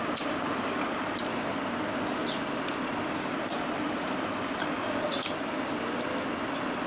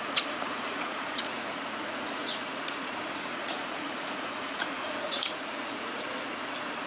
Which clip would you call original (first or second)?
first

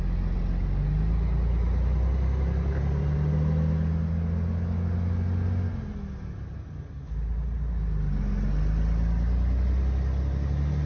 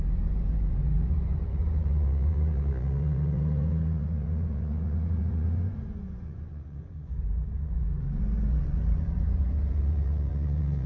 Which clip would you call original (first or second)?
first